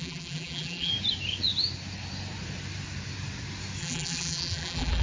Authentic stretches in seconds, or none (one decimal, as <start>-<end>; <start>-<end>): 0.9-3.8